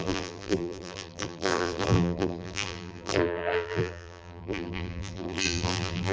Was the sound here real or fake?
fake